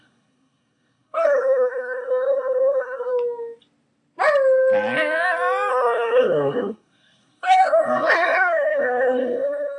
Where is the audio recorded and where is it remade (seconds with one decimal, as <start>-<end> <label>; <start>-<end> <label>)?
0.0-3.1 remade; 3.1-5.7 recorded; 5.7-9.8 remade